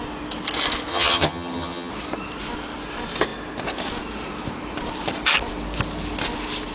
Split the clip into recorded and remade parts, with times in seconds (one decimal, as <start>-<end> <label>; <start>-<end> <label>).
0.0-0.9 recorded; 0.9-1.9 remade; 1.9-6.7 recorded